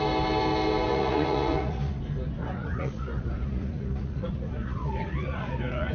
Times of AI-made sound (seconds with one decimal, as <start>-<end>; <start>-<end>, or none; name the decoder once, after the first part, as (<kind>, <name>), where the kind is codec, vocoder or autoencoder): 0.9-2.0 (vocoder, Vocos); 2.4-5.9